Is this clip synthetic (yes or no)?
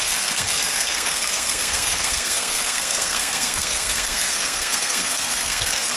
yes